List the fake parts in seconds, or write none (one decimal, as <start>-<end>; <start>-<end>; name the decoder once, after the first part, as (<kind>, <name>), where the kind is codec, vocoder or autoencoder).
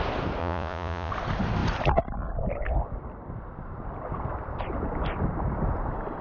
0.4-1.1 (vocoder, Vocos)